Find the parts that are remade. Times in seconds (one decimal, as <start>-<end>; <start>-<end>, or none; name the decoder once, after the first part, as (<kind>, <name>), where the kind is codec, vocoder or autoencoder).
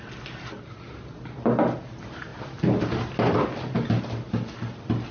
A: none